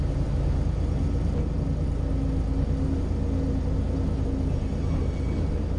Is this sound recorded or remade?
recorded